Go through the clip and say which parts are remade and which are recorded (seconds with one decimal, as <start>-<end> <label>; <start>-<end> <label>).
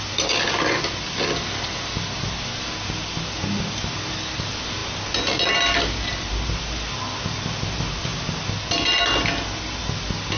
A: 0.0-10.4 recorded